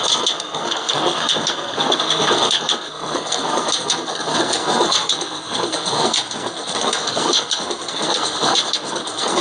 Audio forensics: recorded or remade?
remade